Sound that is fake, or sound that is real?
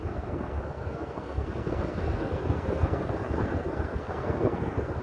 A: fake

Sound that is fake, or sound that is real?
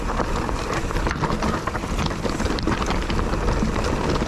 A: real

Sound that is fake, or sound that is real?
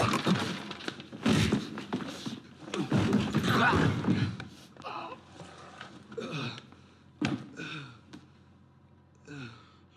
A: real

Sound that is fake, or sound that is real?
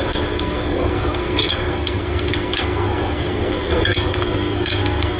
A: fake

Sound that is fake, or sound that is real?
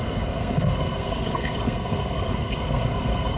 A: fake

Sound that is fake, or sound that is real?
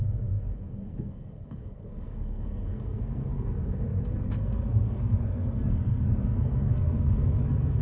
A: fake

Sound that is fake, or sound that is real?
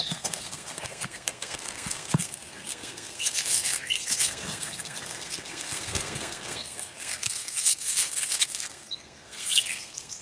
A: fake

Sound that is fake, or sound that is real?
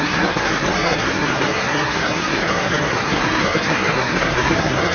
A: fake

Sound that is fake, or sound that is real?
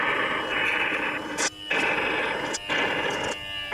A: real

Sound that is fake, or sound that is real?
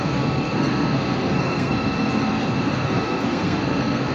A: fake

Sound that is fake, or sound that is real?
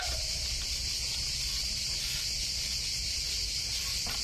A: real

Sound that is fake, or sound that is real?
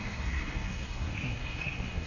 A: fake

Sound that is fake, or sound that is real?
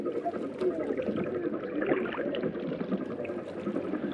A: real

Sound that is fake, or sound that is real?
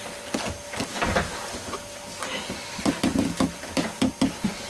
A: real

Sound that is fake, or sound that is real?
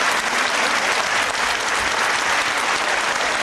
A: real